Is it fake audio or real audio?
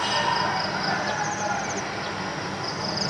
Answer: real